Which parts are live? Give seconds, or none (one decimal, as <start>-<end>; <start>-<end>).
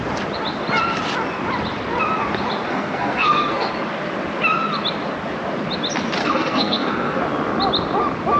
0.0-2.7; 3.7-6.2; 7.2-8.4